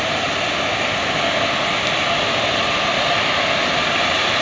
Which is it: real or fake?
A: real